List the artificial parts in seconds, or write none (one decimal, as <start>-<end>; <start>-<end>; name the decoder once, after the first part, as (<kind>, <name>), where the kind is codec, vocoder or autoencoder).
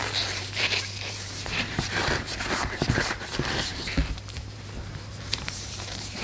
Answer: 0.0-6.2 (vocoder, BigVGAN v2)